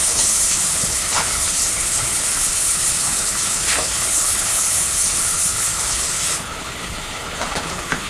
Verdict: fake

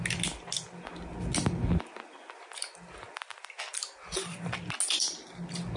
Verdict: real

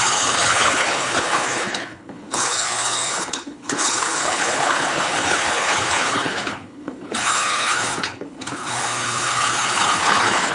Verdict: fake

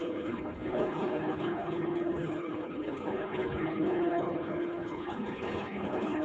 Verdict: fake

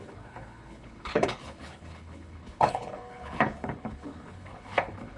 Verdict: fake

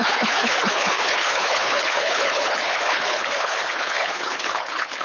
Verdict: fake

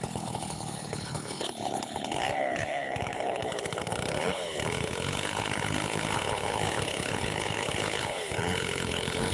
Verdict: fake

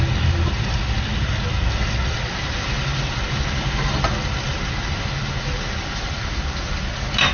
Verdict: real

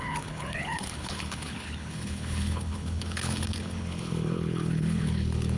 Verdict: fake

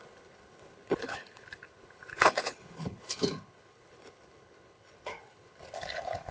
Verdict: fake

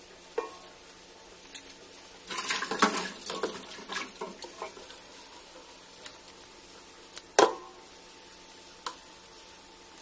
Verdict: real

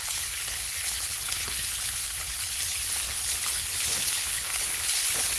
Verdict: fake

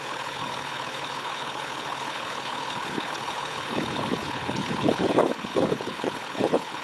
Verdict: fake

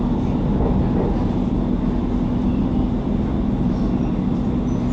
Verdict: real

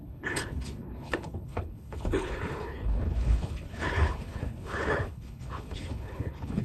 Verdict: fake